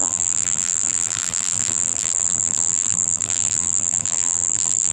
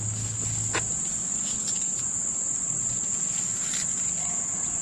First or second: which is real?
second